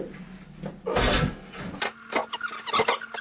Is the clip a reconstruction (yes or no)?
no